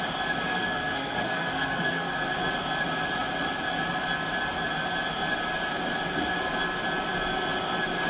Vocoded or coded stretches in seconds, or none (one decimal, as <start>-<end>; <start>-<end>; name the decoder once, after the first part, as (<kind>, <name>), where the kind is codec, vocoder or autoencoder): 0.5-2.4 (codec, SNAC)